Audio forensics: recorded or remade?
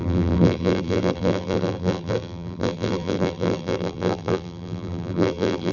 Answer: remade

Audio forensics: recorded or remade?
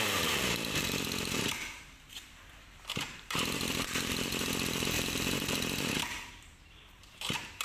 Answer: remade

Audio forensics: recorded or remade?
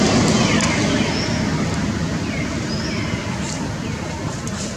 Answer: recorded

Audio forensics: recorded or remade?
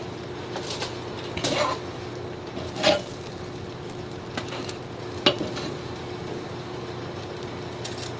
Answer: recorded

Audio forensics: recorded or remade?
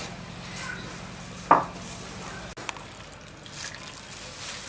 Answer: recorded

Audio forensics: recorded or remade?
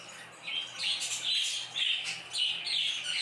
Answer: recorded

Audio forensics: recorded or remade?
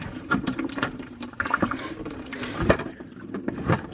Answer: remade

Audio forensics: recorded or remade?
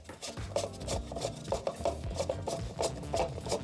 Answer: recorded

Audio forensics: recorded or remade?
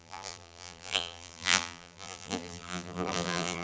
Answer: remade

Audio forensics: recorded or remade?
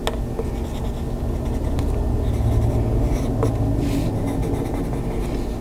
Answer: recorded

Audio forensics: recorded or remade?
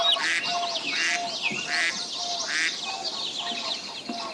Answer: recorded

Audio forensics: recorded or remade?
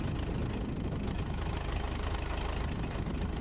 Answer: recorded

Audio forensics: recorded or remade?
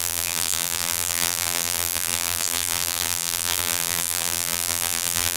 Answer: remade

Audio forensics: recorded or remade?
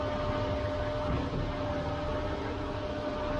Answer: recorded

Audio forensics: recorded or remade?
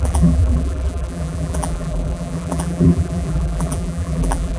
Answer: remade